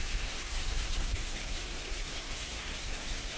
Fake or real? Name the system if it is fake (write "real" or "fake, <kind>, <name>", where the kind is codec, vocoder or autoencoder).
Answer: fake, codec, SNAC